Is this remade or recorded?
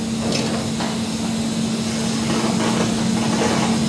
recorded